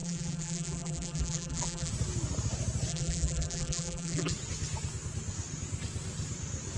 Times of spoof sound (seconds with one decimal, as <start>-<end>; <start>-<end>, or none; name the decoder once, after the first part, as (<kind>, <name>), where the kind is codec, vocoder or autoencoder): 0.0-1.9 (vocoder, BigVGAN v2); 2.9-4.3